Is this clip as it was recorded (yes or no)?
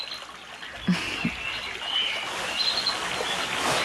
yes